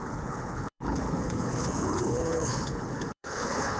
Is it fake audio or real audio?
fake